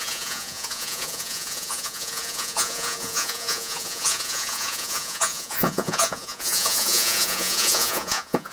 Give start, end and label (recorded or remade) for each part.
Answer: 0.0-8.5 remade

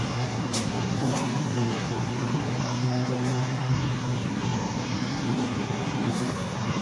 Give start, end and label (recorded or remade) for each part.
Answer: 0.0-6.8 remade

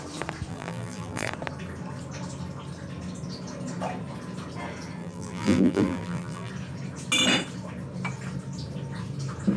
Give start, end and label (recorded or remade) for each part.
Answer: 0.0-0.5 recorded; 0.5-1.3 remade; 1.3-5.0 recorded; 5.0-6.5 remade; 6.5-9.6 recorded

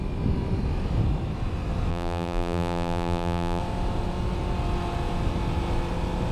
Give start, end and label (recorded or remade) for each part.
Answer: 0.0-1.9 recorded; 1.9-3.6 remade; 3.6-6.3 recorded

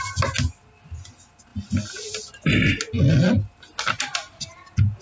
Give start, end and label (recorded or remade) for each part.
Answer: 0.0-5.0 recorded

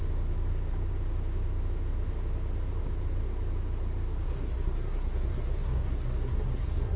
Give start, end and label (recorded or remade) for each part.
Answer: 0.0-4.2 recorded; 4.2-7.0 remade